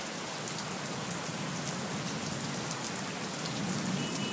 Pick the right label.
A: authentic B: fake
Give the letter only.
A